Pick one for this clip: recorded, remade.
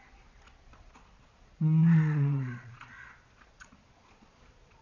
remade